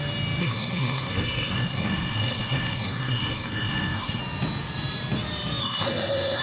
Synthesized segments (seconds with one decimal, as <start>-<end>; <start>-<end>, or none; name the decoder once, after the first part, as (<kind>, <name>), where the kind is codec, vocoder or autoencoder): 0.4-4.2 (codec, SNAC); 5.6-6.4